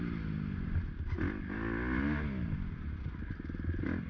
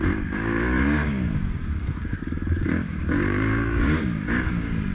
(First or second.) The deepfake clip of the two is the second